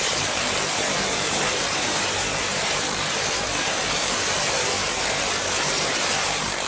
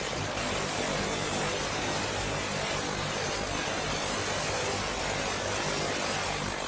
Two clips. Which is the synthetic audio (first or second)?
first